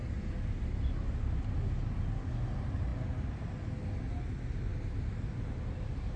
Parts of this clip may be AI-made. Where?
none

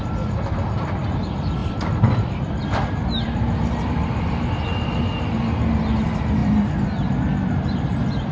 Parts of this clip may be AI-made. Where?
1.6-4.5 (vocoder, BigVGAN v2); 6.4-7.2